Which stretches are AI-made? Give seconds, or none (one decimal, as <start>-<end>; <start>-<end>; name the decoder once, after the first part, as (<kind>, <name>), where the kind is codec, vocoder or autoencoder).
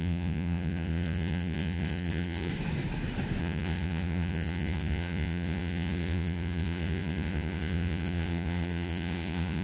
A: 0.0-2.5 (vocoder, Vocos); 3.4-9.6